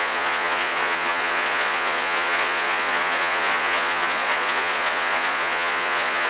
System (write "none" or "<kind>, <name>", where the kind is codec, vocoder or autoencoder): vocoder, Vocos